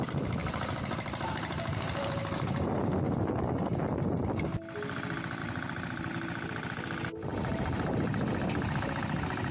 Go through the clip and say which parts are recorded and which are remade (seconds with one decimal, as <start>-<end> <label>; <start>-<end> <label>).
0.0-0.4 recorded; 0.4-2.9 remade; 2.9-5.4 recorded; 5.4-6.1 remade; 6.1-7.3 recorded; 7.3-9.5 remade